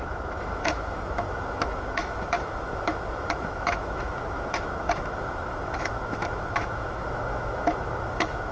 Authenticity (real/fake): fake